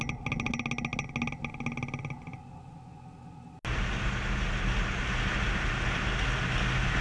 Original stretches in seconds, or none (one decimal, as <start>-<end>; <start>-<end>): 0.0-7.0